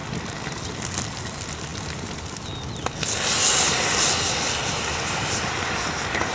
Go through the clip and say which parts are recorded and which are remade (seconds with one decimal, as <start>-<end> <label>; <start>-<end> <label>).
0.0-6.3 recorded